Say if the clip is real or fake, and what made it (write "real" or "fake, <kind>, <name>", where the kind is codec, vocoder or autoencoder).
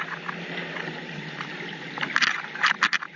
real